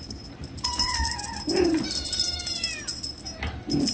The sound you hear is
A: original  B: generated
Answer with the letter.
A